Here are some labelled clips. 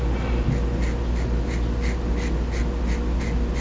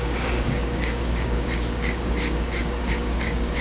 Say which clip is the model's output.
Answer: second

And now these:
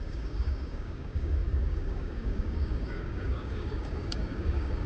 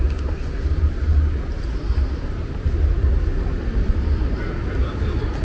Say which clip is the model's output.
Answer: first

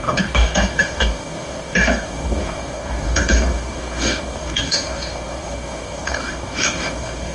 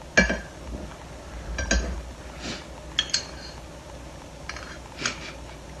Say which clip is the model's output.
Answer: first